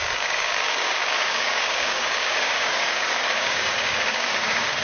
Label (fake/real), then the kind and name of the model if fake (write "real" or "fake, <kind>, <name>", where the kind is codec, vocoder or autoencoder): fake, codec, DAC